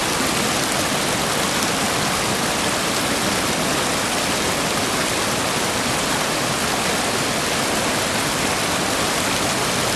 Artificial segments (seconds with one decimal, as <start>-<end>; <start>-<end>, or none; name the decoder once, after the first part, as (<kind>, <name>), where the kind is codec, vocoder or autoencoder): none